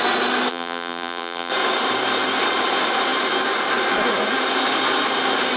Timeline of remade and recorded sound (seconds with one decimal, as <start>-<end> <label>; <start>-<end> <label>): 0.0-0.5 recorded; 0.5-1.5 remade; 1.5-5.6 recorded